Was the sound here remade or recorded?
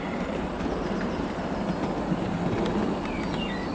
recorded